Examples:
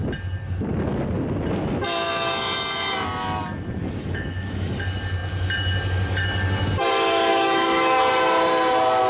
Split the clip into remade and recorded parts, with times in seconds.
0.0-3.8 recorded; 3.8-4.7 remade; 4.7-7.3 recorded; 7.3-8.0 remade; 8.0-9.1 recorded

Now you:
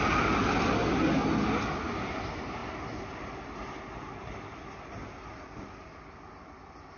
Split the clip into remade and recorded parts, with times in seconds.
0.0-7.0 recorded

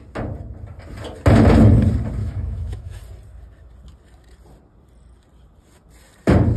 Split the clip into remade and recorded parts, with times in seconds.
0.0-2.2 recorded; 2.2-3.0 remade; 3.0-6.6 recorded

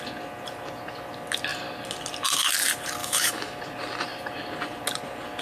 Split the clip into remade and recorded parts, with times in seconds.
0.0-3.0 recorded; 3.0-3.6 remade; 3.6-5.4 recorded